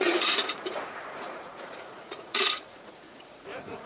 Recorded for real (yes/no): no